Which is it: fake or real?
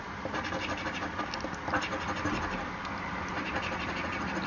real